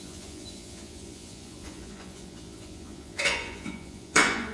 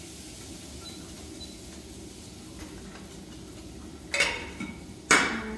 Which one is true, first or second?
second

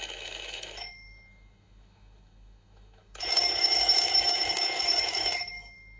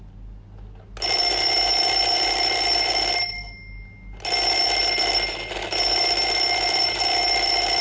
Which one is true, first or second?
second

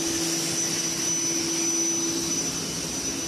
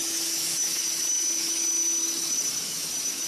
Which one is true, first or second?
first